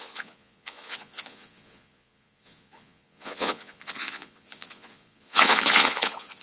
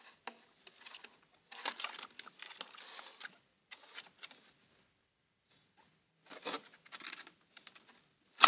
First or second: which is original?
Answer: second